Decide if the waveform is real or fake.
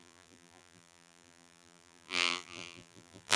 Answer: fake